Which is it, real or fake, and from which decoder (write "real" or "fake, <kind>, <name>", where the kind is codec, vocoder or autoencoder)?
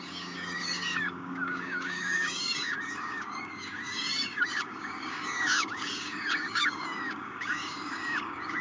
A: fake, codec, DAC